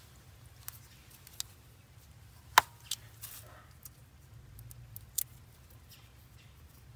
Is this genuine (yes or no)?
yes